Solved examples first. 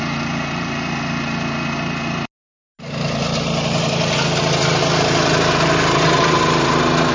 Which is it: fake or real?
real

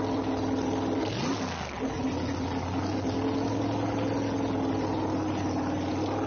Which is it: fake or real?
real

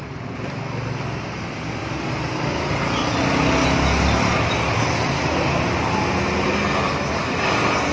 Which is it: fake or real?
real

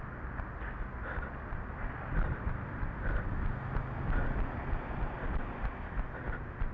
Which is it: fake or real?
real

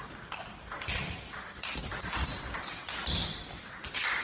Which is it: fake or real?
real